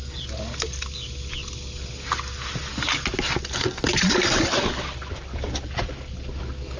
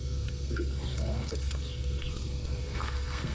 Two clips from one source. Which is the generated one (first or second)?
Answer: second